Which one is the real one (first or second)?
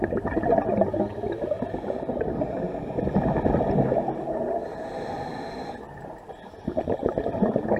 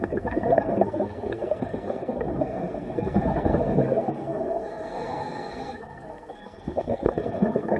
first